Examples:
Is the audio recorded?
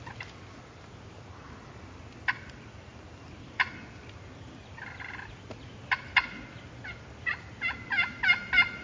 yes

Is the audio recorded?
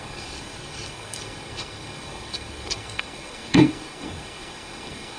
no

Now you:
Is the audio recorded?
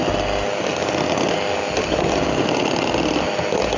yes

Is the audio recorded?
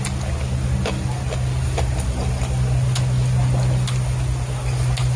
yes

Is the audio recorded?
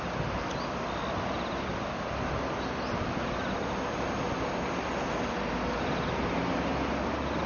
yes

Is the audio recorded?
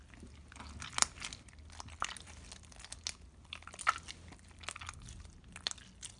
yes